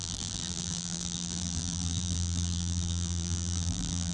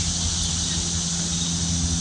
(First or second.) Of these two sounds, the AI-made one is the first